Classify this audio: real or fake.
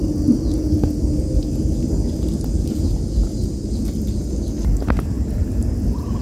real